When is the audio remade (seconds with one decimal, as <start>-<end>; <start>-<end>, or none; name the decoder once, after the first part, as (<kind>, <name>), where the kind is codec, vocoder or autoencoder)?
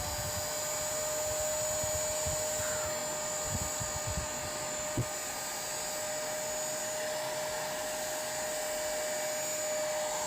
none